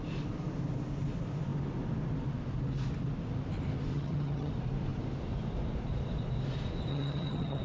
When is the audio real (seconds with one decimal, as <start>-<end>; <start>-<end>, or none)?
0.0-3.9; 4.5-6.9